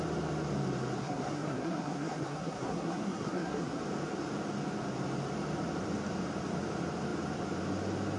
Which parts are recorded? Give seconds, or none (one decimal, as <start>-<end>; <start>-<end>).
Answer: 0.0-1.0; 3.8-8.2